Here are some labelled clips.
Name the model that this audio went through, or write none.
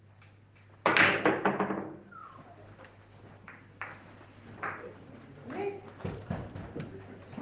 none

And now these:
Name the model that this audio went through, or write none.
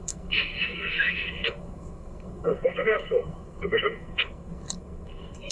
codec, SNAC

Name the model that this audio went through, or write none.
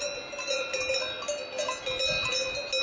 none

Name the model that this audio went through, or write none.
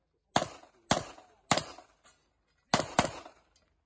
none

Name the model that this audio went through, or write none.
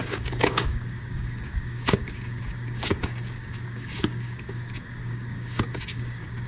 codec, DAC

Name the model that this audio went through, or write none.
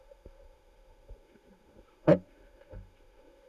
autoencoder, DAC-VAE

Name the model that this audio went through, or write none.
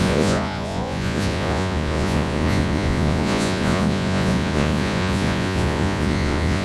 vocoder, Vocos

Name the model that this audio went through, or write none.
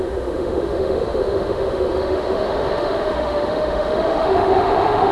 autoencoder, DAC-VAE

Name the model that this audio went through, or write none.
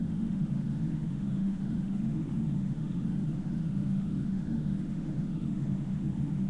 autoencoder, DAC-VAE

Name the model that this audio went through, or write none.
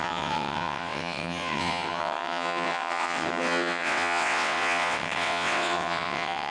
vocoder, WaveNeXt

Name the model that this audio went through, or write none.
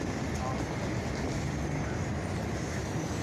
none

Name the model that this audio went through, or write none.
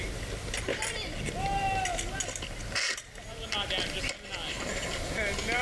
none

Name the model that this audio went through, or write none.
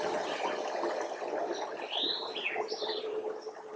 none